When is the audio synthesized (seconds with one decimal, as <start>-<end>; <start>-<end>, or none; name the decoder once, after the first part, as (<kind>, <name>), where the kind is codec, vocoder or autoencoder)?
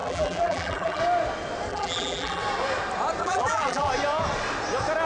0.0-1.0 (vocoder, BigVGAN v2); 1.7-2.4; 3.2-3.9